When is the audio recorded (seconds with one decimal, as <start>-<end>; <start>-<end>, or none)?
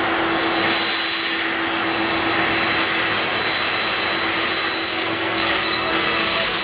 0.0-4.9